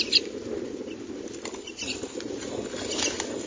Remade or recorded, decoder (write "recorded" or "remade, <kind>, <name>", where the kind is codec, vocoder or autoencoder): recorded